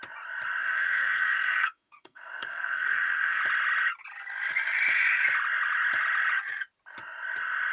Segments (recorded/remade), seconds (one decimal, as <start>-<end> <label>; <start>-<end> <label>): 0.0-0.6 recorded; 0.6-3.4 remade; 3.4-7.7 recorded